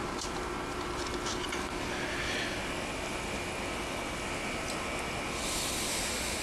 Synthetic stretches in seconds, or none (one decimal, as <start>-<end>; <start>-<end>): none